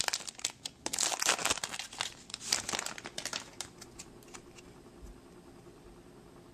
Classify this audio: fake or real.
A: real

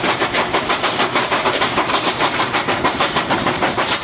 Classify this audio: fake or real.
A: fake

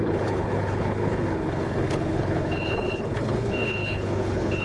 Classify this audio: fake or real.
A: fake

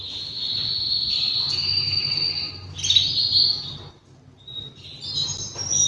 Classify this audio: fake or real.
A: real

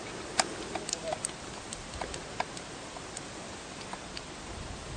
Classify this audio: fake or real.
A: real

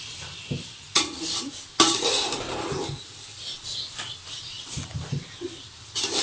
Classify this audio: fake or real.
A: real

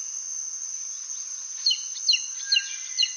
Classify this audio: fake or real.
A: real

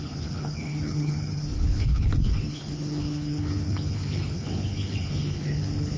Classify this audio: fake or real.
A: fake